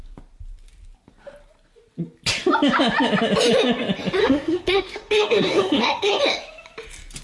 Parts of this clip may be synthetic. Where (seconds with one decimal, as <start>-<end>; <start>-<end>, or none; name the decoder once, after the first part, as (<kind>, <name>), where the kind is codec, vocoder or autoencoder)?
4.2-6.2 (codec, SNAC)